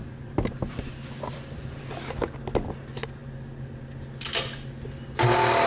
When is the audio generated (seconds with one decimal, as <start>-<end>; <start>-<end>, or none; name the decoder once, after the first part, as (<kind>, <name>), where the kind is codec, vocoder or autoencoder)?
0.0-1.8 (vocoder, BigVGAN v2)